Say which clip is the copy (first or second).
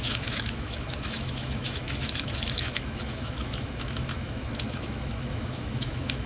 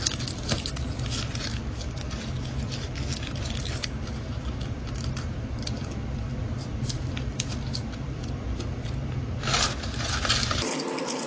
first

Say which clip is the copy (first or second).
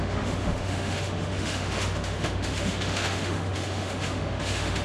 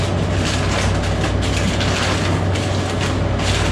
first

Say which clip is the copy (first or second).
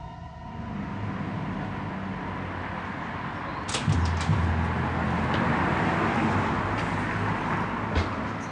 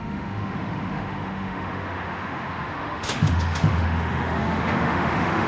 second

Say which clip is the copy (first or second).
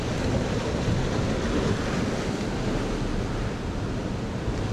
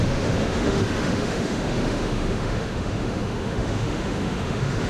second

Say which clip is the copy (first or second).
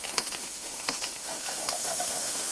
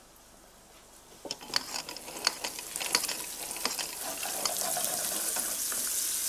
first